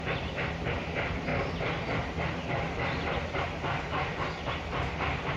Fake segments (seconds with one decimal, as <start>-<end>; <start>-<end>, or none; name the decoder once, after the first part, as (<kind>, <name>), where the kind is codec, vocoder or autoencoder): 0.0-5.4 (vocoder, BigVGAN v2)

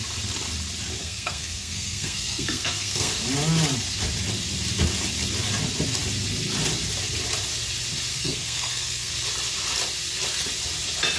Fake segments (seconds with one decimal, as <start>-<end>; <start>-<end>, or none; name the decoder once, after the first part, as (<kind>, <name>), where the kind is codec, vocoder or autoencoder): 1.0-3.1 (codec, SNAC); 8.1-9.1

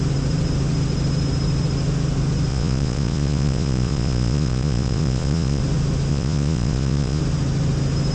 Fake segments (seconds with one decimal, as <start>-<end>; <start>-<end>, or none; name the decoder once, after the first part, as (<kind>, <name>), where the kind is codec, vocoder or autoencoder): 2.5-5.6 (vocoder, Vocos); 6.1-7.2

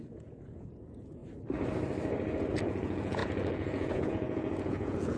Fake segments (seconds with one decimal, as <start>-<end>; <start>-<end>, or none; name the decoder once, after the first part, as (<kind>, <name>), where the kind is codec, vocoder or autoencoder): 0.0-1.2 (vocoder, Vocos); 2.6-5.2

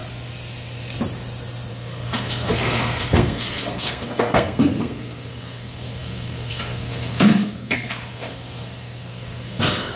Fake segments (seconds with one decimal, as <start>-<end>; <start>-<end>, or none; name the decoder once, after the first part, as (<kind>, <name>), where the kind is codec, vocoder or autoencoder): 1.7-10.0 (codec, SNAC)